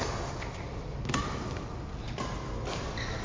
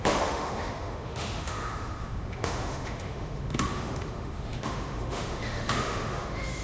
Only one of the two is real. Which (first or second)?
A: first